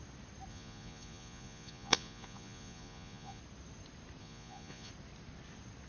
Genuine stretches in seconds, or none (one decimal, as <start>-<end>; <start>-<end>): 0.0-0.5; 3.4-4.2; 4.9-5.9